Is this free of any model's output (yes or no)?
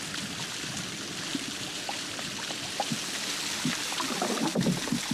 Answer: yes